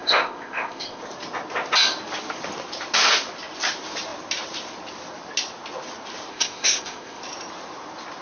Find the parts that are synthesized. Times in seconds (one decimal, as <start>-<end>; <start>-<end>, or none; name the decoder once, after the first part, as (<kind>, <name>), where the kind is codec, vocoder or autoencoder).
0.0-1.0 (codec, ZipCodec); 6.3-7.2